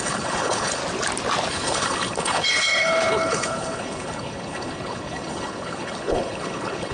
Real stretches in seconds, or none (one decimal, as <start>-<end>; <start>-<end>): 0.8-1.5